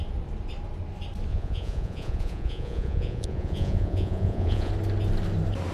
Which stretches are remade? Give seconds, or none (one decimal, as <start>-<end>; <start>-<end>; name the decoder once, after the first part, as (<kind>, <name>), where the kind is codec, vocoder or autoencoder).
1.3-4.7 (vocoder, Vocos)